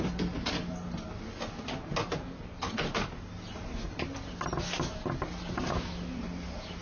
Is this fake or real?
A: real